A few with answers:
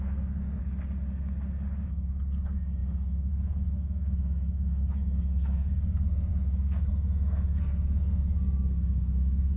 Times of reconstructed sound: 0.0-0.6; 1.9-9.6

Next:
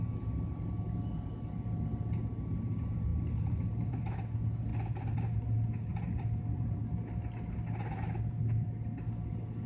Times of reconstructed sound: 3.1-4.0; 4.7-5.4; 5.9-6.8

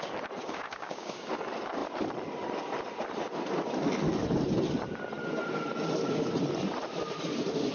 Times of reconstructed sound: 0.4-1.3